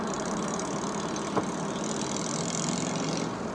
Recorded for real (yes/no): yes